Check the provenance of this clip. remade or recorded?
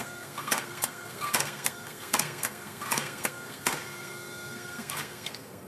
remade